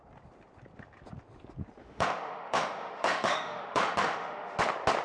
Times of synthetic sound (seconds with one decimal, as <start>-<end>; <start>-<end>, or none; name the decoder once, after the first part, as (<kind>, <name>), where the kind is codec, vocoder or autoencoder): 1.8-4.6 (autoencoder, DAC-VAE)